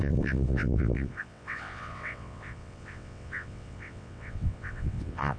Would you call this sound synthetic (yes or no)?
yes